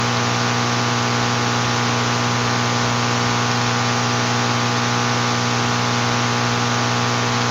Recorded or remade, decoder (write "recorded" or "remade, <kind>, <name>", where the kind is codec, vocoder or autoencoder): recorded